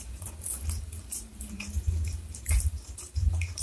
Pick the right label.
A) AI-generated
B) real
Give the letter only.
A